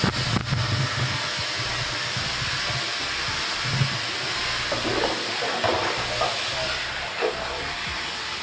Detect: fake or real real